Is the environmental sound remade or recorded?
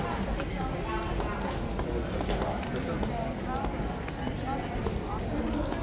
recorded